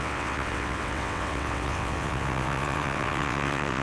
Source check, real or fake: fake